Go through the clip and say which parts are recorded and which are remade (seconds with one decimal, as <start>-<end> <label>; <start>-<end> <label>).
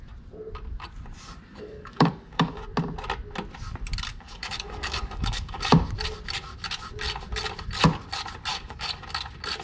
0.0-1.5 recorded; 1.5-2.6 remade; 2.6-4.1 recorded; 4.1-5.7 remade; 5.7-8.5 recorded; 8.5-9.0 remade; 9.0-9.6 recorded